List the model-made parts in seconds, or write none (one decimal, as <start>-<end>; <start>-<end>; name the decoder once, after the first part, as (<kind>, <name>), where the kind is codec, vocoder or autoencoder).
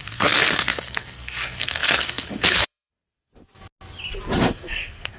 0.0-3.3 (codec, SNAC); 4.4-5.2